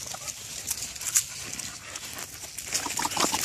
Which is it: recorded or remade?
recorded